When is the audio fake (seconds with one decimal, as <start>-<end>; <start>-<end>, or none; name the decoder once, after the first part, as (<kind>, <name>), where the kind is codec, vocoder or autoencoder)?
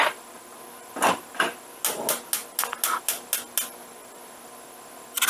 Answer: none